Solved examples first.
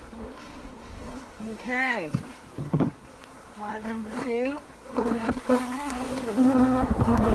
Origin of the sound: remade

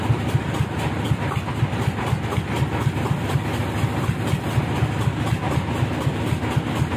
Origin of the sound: recorded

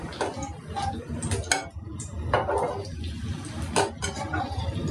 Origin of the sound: recorded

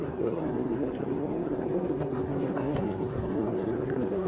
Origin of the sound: remade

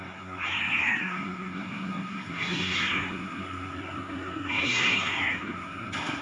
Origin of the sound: remade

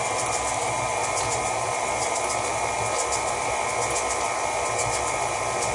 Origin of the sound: recorded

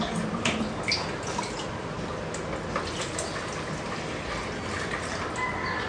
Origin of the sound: recorded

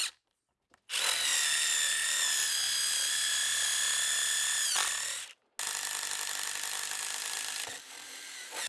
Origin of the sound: recorded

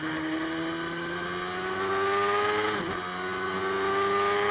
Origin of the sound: recorded